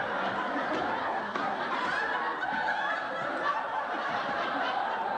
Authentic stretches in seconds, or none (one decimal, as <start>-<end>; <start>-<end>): 0.0-1.0; 1.6-5.2